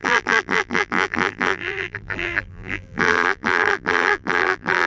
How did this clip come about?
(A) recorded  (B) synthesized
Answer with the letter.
B